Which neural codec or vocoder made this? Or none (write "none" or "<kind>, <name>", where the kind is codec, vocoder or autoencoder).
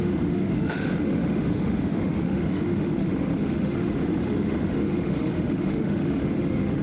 autoencoder, DAC-VAE